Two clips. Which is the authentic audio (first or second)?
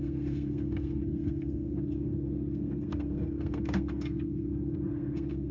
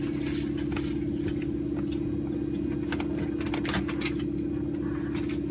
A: second